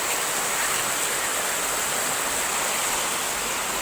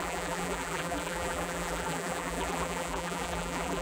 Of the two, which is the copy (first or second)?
second